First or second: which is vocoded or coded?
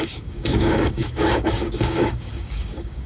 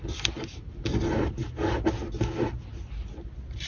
first